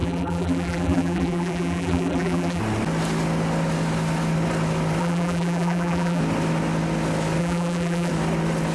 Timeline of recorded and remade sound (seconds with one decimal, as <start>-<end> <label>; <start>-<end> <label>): 0.0-2.6 remade; 2.6-5.0 recorded; 5.0-6.2 remade; 6.2-7.4 recorded; 7.4-8.1 remade; 8.1-8.7 recorded

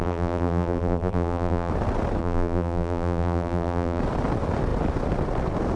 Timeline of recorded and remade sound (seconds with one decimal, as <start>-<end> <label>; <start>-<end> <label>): 0.0-1.7 remade; 1.7-2.2 recorded; 2.2-4.0 remade; 4.0-5.8 recorded

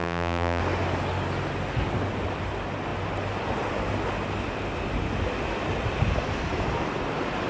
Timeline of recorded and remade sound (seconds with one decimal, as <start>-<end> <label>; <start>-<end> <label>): 0.0-0.6 remade; 0.6-7.5 recorded